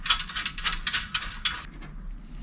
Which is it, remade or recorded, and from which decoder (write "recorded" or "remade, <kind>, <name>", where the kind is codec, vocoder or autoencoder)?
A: recorded